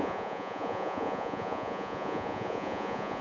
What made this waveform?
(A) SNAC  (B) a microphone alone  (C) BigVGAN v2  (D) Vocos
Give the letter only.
D